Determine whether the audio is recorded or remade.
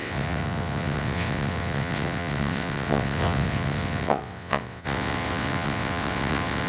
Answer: remade